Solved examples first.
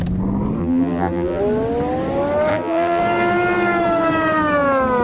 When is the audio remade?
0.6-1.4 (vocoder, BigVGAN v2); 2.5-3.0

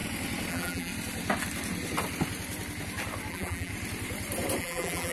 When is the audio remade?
0.5-0.9 (vocoder, BigVGAN v2); 3.3-3.7; 4.6-5.1